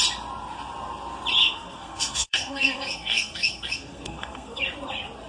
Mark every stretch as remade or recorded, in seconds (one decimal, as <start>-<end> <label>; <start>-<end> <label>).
0.0-1.4 recorded; 1.4-4.6 remade; 4.6-5.3 recorded